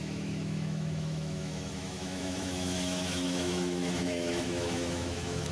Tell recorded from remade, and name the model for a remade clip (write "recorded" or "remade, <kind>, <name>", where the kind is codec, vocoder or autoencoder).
remade, autoencoder, DAC-VAE